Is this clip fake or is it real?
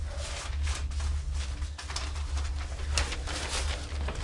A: real